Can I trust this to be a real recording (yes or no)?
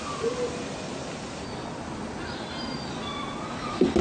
yes